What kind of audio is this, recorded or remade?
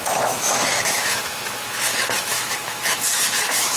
remade